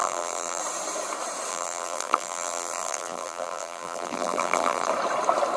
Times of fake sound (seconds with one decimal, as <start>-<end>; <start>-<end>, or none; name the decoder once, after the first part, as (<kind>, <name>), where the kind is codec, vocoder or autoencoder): 0.0-0.6 (vocoder, BigVGAN v2); 1.5-4.9